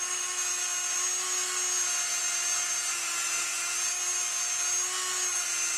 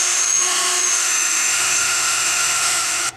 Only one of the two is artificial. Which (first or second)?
second